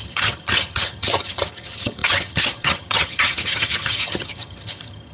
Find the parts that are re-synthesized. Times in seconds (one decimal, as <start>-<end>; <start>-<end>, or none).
0.0-5.1